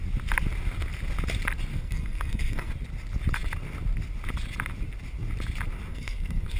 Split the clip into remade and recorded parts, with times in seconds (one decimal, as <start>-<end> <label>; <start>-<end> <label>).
0.0-1.7 recorded; 1.7-2.7 remade; 2.7-5.9 recorded; 5.9-6.6 remade